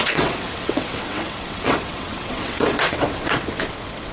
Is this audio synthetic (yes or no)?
yes